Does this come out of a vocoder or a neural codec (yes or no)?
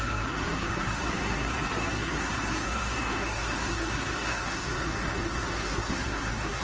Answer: yes